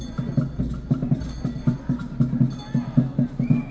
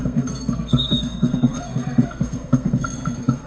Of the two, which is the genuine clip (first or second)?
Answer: first